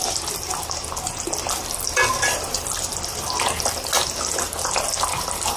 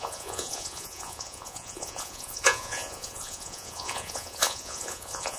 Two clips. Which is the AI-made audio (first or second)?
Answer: second